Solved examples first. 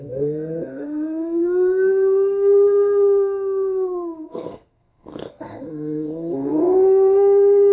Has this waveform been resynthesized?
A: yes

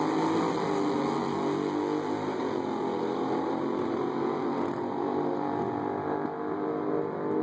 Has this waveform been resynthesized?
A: no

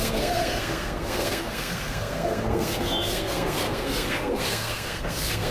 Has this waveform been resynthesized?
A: yes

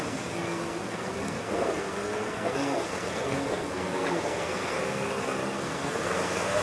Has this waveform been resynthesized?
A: yes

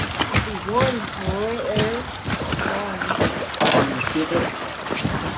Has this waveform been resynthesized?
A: no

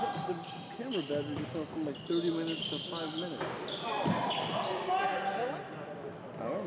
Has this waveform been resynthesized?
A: no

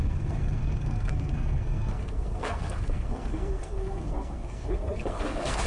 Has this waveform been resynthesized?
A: yes